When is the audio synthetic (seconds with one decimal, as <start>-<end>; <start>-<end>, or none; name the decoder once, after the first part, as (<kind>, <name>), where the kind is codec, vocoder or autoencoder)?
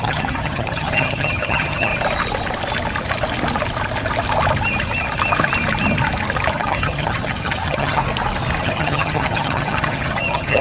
0.0-1.9 (vocoder, HiFi-GAN); 6.5-8.0; 8.6-10.6